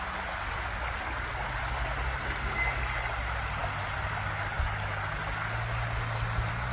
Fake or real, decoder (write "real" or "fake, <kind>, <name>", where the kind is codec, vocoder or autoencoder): real